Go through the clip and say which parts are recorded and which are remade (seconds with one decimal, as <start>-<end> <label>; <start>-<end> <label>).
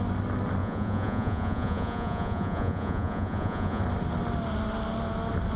0.0-0.6 recorded; 0.6-3.8 remade; 3.8-5.6 recorded